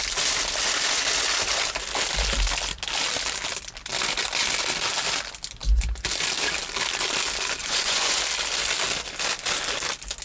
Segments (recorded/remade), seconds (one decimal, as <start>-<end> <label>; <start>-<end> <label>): 0.0-7.6 recorded; 7.6-8.2 remade; 8.2-10.2 recorded

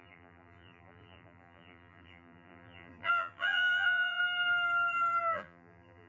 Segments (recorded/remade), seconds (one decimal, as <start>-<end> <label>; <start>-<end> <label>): 0.0-4.2 remade; 4.2-5.2 recorded; 5.2-6.1 remade

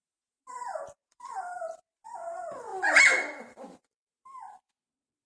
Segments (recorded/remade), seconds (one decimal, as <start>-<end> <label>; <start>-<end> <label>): 0.0-0.7 recorded; 0.7-1.8 remade; 1.8-2.7 recorded; 2.7-4.1 remade; 4.1-5.3 recorded

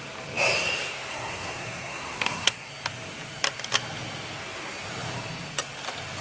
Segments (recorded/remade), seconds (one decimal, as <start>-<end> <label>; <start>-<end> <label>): 0.0-1.1 recorded; 1.1-2.7 remade; 2.7-6.2 recorded

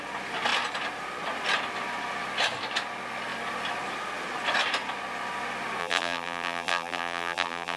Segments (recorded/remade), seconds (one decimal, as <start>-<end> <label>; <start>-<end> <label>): 0.0-5.8 recorded; 5.8-7.8 remade

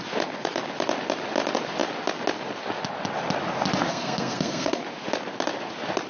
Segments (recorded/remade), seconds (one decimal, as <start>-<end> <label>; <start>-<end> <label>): 0.0-3.9 recorded; 3.9-4.8 remade; 4.8-6.1 recorded